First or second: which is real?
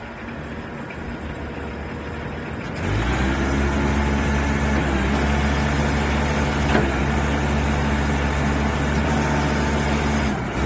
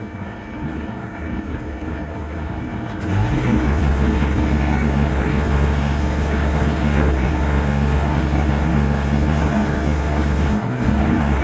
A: first